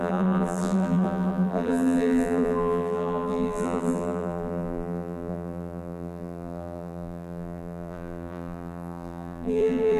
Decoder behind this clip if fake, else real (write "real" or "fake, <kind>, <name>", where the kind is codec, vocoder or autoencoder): fake, vocoder, BigVGAN v2